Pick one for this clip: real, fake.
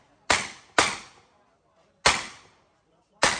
real